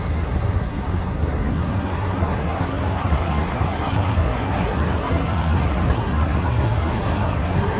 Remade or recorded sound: remade